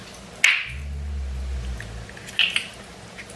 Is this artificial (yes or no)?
no